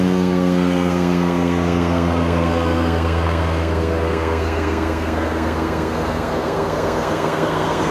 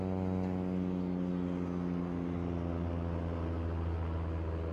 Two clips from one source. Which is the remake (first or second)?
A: first